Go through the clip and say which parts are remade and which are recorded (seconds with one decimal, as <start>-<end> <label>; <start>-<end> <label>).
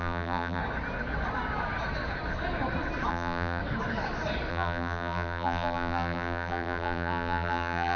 0.0-0.6 remade; 0.6-3.1 recorded; 3.1-3.6 remade; 3.6-4.5 recorded; 4.5-8.0 remade